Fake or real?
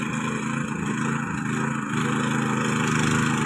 real